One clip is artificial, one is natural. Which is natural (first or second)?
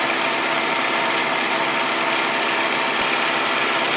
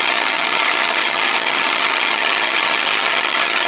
first